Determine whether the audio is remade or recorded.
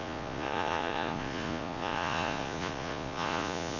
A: remade